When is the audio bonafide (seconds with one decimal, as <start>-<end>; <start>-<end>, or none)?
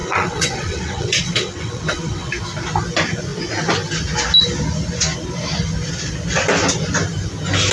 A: 2.3-7.7